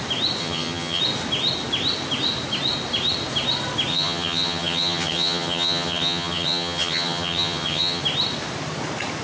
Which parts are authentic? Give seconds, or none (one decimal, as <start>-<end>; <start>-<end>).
0.0-0.4; 1.0-3.9; 8.0-9.2